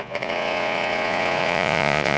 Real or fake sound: fake